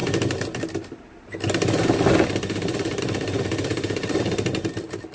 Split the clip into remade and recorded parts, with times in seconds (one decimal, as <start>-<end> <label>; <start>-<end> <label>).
0.0-3.7 recorded; 3.7-4.3 remade; 4.3-5.1 recorded